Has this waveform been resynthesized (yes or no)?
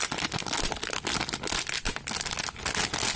no